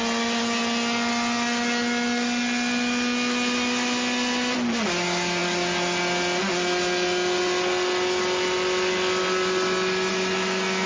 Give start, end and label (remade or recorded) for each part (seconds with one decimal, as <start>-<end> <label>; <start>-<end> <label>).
0.0-10.9 recorded